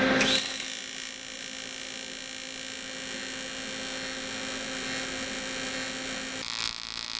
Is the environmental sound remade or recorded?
recorded